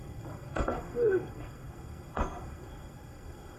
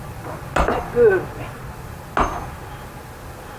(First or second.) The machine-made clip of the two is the first